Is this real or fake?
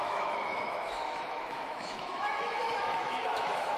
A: fake